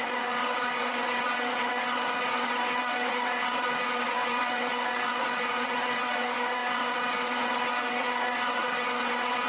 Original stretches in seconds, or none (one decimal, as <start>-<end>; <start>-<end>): none